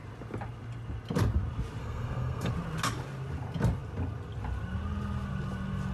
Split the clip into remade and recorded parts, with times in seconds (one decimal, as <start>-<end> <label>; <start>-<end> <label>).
0.0-1.8 recorded; 1.8-2.5 remade; 2.5-5.9 recorded